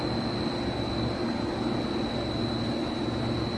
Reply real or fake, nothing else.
real